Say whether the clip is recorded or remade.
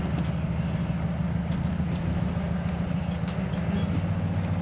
recorded